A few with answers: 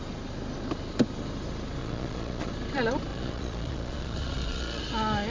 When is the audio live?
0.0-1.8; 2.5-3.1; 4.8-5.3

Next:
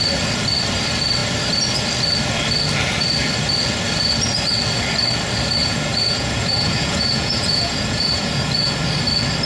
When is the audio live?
0.0-5.6; 8.9-9.5

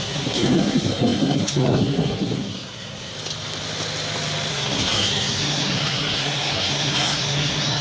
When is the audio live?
3.1-4.5

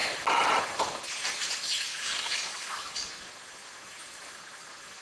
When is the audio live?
0.0-1.9; 3.1-5.0

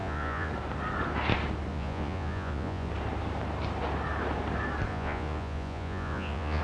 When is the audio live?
0.5-1.7; 2.9-4.9

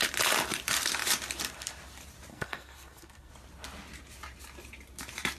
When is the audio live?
0.0-2.3; 3.3-5.4

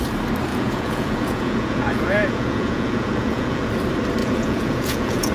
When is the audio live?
0.0-0.5; 3.7-4.2